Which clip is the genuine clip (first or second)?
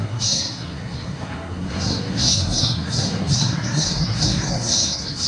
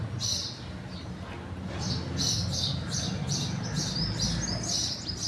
second